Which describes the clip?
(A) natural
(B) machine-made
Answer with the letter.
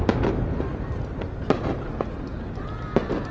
A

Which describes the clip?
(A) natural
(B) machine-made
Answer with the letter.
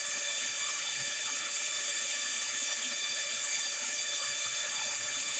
B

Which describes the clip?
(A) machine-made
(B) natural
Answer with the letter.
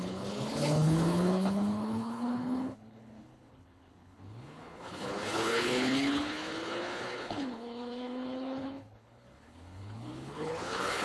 A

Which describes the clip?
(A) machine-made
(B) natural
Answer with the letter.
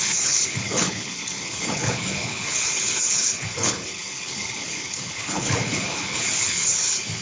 A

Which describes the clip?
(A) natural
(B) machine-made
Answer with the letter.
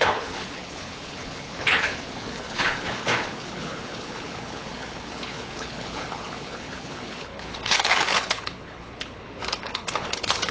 B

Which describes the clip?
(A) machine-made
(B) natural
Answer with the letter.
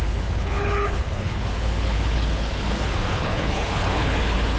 A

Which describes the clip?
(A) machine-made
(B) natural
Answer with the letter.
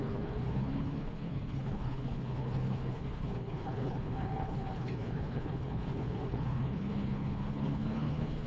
A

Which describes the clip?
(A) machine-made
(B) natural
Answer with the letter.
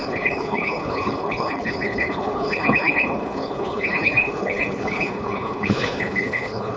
A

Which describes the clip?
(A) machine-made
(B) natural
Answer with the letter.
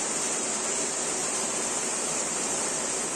B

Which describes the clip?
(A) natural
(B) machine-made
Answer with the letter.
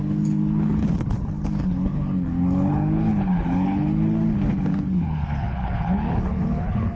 B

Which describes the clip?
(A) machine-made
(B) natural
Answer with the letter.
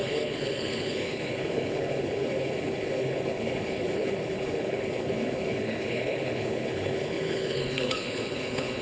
A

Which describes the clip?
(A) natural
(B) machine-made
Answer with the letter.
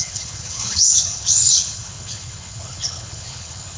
B